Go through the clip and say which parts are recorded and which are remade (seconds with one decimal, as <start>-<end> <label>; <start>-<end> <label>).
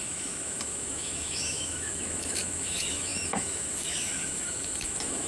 0.0-5.3 remade